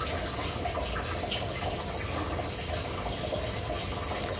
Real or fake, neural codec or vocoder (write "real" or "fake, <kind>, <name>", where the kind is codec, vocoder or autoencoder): fake, vocoder, BigVGAN v2